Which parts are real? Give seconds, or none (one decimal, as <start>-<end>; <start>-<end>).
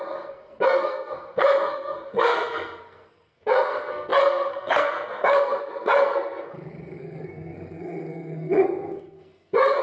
none